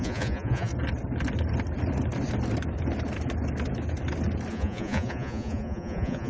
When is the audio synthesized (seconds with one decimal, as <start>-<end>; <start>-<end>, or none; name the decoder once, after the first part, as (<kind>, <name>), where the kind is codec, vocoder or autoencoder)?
0.0-0.7 (vocoder, Vocos); 4.5-6.3